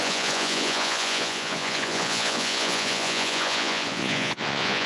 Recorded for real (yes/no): no